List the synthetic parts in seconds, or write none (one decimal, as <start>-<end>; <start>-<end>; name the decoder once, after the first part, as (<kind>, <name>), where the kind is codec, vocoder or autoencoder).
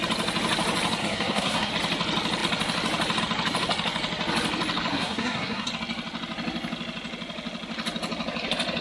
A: 1.0-1.7 (codec, SNAC); 4.9-5.7